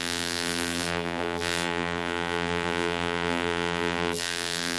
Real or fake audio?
fake